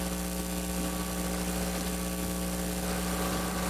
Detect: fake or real real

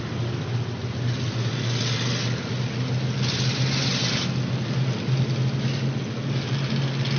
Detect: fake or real real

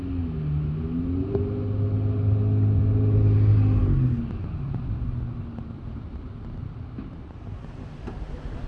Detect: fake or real real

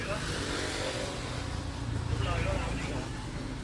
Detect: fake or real real